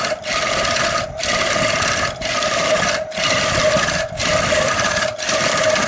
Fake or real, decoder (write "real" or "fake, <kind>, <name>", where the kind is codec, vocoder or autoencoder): fake, vocoder, BigVGAN v2